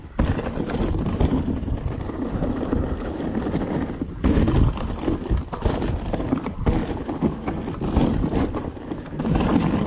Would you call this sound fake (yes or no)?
yes